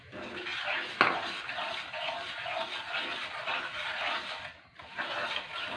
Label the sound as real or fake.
real